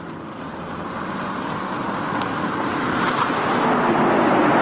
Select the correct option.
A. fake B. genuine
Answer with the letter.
B